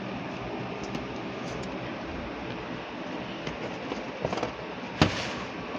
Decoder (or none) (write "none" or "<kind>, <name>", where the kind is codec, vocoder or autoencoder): none